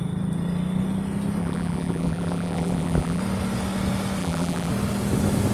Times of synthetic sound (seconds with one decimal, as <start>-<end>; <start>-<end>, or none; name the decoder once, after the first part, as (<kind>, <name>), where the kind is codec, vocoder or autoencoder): 1.4-3.2 (vocoder, BigVGAN v2); 4.2-4.7